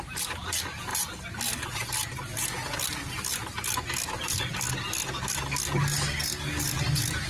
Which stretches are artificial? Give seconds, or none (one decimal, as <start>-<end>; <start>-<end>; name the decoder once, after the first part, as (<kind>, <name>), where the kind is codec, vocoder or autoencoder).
none